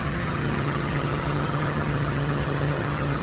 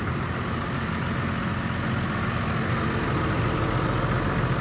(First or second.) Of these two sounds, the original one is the second